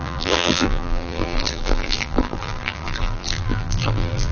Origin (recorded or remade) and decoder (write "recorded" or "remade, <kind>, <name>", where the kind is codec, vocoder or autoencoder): remade, vocoder, BigVGAN v2